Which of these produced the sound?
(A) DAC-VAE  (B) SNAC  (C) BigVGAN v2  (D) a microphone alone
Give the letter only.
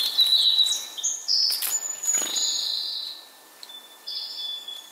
D